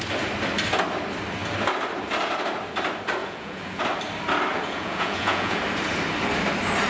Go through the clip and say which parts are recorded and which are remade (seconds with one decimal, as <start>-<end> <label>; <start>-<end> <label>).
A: 0.0-3.2 recorded; 3.2-3.8 remade; 3.8-4.5 recorded; 4.5-5.6 remade; 5.6-6.9 recorded

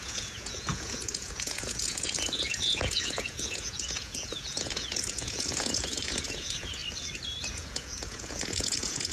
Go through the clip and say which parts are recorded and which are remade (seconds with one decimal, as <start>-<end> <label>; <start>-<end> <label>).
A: 0.0-6.8 remade; 6.8-7.5 recorded; 7.5-9.1 remade

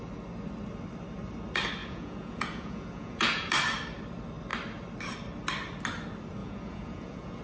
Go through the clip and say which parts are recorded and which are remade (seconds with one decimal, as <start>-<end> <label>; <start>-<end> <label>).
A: 0.0-1.8 recorded; 1.8-3.5 remade; 3.5-6.4 recorded; 6.4-7.4 remade

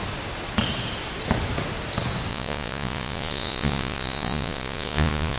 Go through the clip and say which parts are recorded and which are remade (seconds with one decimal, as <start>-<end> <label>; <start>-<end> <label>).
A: 0.0-2.3 recorded; 2.3-5.4 remade

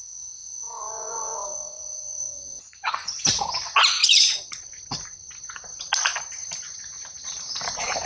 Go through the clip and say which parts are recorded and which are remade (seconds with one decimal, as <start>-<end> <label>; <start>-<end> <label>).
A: 0.0-0.5 recorded; 0.5-3.2 remade; 3.2-8.1 recorded